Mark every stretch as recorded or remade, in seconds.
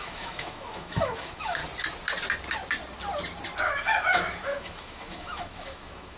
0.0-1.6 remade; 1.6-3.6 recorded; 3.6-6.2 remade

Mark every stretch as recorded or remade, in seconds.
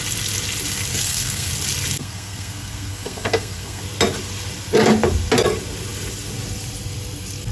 0.0-0.9 recorded; 0.9-1.5 remade; 1.5-2.0 recorded; 2.0-3.8 remade; 3.8-7.5 recorded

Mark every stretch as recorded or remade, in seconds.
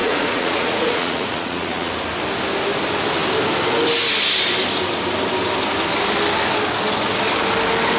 0.0-1.9 remade; 1.9-8.0 recorded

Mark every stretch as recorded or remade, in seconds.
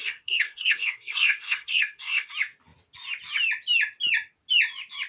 0.0-2.3 remade; 2.3-5.1 recorded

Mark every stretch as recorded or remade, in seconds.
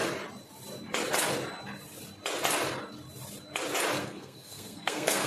0.0-4.0 recorded; 4.0-5.3 remade